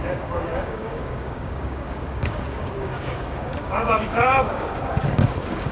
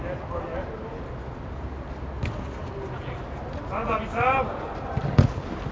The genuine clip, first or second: second